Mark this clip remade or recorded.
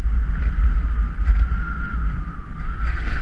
recorded